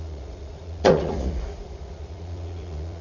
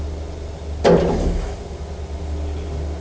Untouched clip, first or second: second